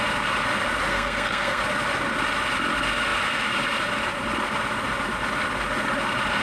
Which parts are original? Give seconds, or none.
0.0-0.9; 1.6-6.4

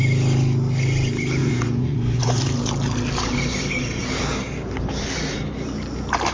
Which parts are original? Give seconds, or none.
0.0-1.4; 2.4-6.3

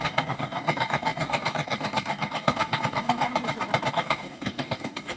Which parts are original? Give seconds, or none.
3.3-3.9

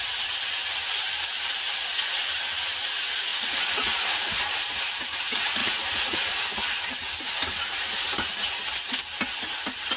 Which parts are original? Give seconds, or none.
0.0-3.3; 4.4-5.6; 6.3-10.0

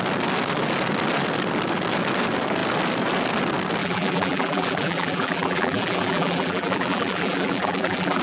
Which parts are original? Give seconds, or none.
0.0-3.8

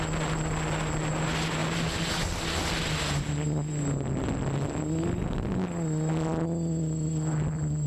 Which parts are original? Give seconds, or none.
0.0-7.9

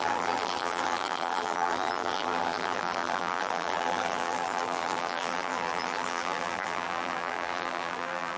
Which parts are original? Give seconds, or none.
none

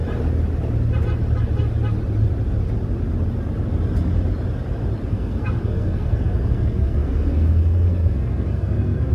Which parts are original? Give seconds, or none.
0.0-5.1